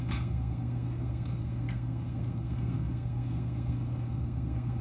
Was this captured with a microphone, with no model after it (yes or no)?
no